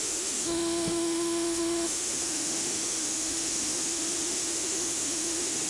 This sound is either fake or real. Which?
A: fake